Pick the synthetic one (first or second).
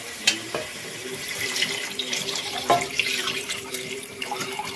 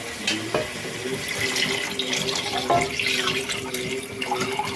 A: first